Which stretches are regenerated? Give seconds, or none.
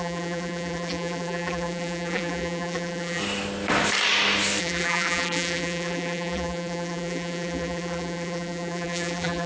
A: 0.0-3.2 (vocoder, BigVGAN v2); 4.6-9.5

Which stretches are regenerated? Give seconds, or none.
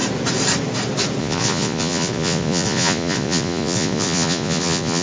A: 1.2-5.0 (vocoder, Vocos)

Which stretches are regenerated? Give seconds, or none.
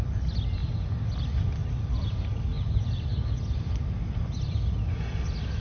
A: 1.6-3.2 (vocoder, BigVGAN v2)